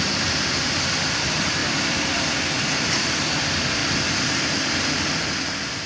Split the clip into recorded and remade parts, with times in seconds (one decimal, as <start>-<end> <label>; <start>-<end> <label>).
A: 0.0-1.6 remade; 1.6-2.9 recorded; 2.9-5.9 remade